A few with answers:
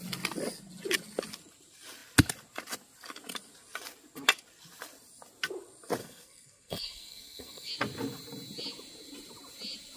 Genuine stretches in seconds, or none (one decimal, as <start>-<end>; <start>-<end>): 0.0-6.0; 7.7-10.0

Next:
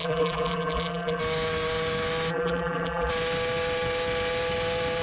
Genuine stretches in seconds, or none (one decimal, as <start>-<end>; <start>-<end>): 1.2-2.3; 3.1-5.0

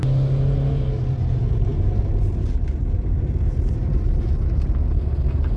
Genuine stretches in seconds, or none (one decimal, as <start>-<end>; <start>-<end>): 0.0-5.6

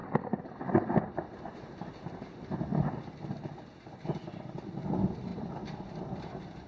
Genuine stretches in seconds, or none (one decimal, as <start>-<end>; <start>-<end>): 5.3-6.2

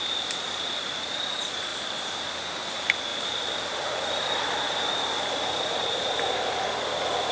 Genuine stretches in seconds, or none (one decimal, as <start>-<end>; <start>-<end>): 0.0-1.7; 2.3-3.1; 6.5-7.3

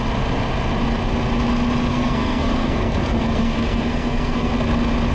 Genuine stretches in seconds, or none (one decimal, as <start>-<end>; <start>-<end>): 0.0-1.9; 4.5-5.1